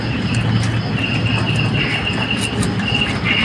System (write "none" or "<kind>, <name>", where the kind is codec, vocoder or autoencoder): none